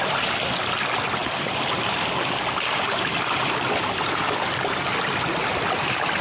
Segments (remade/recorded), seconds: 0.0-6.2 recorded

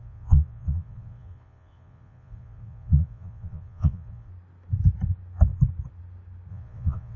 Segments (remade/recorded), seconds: 0.0-4.3 remade; 4.3-6.5 recorded; 6.5-7.2 remade

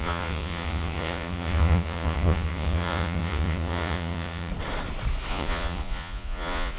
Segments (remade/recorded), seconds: 0.0-4.5 remade; 4.5-5.3 recorded; 5.3-6.8 remade

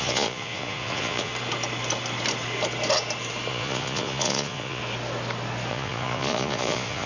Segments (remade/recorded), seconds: 0.0-1.3 remade; 1.3-3.5 recorded; 3.5-4.8 remade; 4.8-5.7 recorded; 5.7-7.1 remade

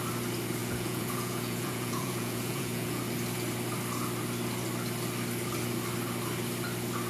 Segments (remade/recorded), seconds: 0.0-0.6 recorded; 0.6-3.0 remade; 3.0-7.1 recorded

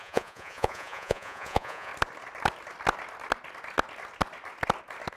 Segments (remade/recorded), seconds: 0.0-1.9 remade; 1.9-5.2 recorded

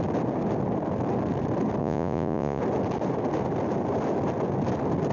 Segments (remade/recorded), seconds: 0.0-1.8 recorded; 1.8-2.6 remade; 2.6-5.1 recorded

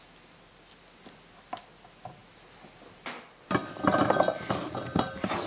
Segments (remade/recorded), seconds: 0.0-5.5 recorded